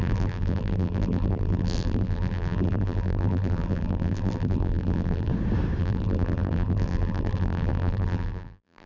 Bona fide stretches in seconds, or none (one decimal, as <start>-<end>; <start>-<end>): 5.3-5.8